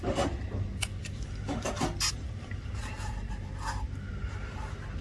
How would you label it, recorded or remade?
recorded